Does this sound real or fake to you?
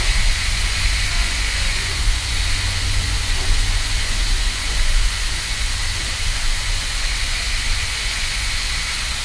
fake